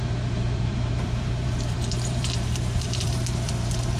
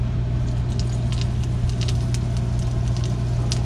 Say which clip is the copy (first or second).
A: first